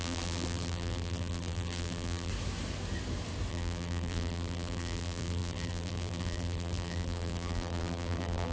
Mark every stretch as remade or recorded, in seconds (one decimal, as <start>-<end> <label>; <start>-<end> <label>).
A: 0.0-2.3 remade; 2.3-3.5 recorded; 3.5-8.5 remade